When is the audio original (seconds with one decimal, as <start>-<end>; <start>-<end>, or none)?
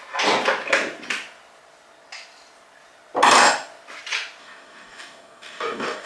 0.0-4.4